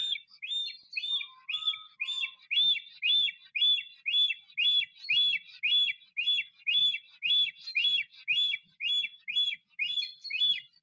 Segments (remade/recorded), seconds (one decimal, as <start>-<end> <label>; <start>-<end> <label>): 0.0-10.8 recorded